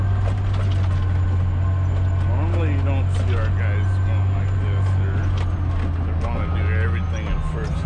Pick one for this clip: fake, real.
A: real